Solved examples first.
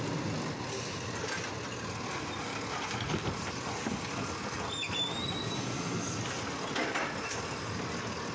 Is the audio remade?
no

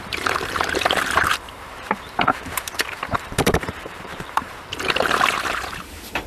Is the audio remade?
yes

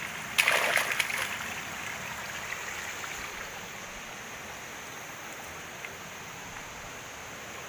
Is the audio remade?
no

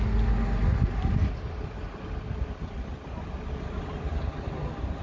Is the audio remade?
no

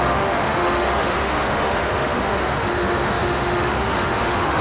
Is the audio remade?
yes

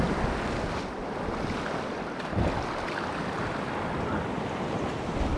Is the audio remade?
yes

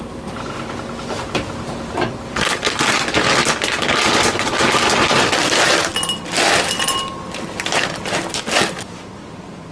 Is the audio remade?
no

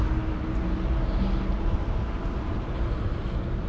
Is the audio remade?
no